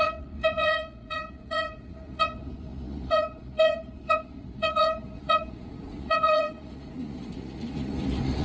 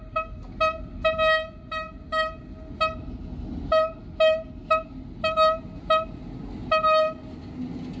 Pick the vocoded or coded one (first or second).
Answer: first